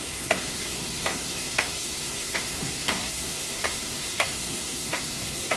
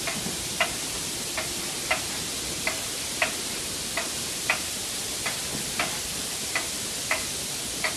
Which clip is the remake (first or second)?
first